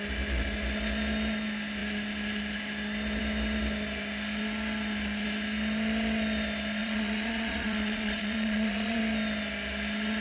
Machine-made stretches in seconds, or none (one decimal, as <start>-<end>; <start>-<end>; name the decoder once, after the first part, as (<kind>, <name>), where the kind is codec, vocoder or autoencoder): 6.8-9.0 (vocoder, Vocos)